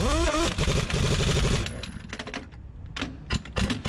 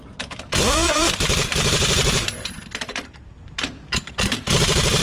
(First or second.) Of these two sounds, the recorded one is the first